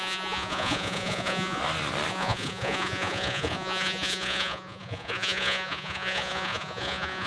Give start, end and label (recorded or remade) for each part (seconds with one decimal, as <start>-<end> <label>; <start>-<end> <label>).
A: 0.0-1.6 remade; 1.6-2.1 recorded; 2.1-7.3 remade